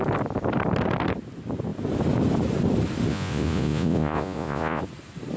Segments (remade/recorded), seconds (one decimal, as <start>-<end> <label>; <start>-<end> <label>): 0.0-3.1 recorded; 3.1-4.8 remade; 4.8-5.4 recorded